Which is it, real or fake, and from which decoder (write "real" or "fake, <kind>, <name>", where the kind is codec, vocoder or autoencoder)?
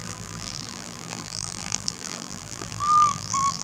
fake, vocoder, BigVGAN v2